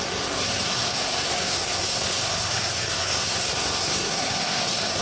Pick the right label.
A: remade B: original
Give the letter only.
A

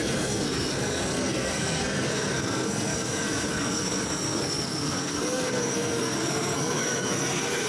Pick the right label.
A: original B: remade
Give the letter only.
B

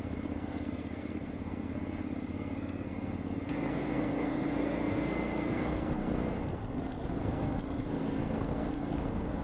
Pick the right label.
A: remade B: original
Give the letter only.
A